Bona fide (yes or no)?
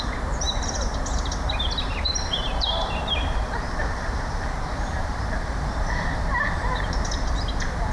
no